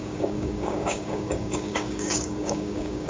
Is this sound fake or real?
fake